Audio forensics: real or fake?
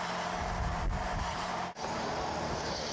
fake